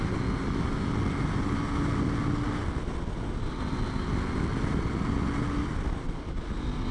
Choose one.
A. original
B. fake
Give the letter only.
A